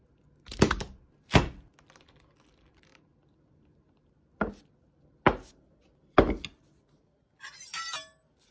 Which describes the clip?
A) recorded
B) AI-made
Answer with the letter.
A